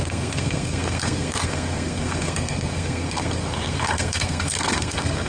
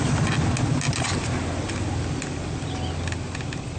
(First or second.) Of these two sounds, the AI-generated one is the first